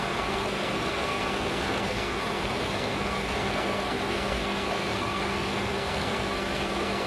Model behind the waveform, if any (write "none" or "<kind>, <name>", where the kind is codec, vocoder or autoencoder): codec, SNAC